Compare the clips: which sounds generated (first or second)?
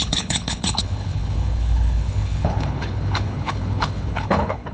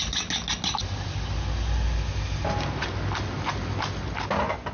first